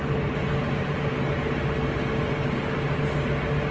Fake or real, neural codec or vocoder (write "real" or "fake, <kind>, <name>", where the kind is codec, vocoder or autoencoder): real